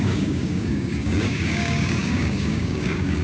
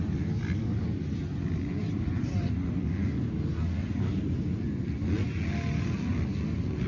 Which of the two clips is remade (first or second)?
first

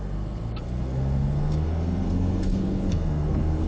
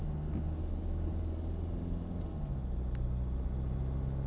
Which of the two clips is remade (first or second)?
first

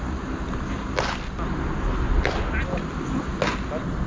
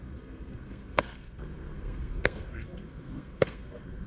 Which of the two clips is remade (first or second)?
second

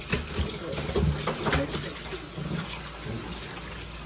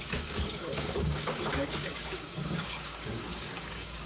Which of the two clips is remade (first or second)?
second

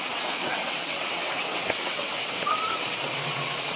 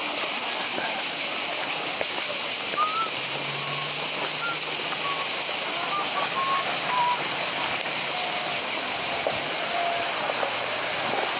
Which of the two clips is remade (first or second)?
first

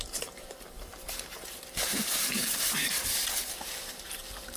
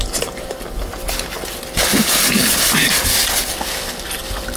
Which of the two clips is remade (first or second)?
first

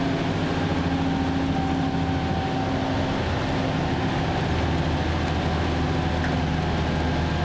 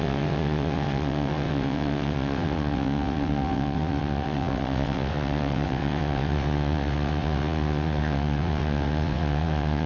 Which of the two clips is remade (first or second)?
second